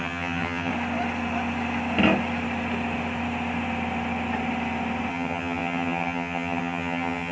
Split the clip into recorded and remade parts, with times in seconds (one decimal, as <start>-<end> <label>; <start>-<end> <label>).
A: 0.0-0.7 remade; 0.7-5.1 recorded; 5.1-7.3 remade

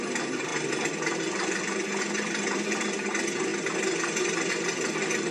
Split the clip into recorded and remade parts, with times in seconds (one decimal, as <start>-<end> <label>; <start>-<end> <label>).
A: 0.0-5.3 recorded

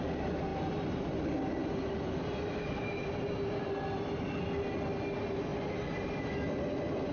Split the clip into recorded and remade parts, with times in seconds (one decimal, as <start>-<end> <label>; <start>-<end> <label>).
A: 0.0-7.1 recorded

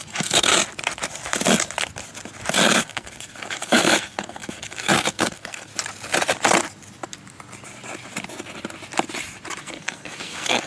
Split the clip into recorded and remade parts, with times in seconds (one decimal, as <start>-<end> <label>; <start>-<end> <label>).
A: 0.0-0.5 remade; 0.5-2.8 recorded; 2.8-5.7 remade; 5.7-9.6 recorded; 9.6-10.7 remade